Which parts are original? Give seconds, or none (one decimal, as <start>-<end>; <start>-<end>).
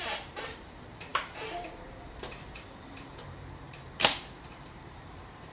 none